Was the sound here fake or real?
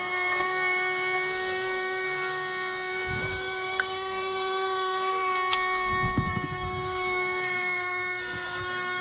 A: fake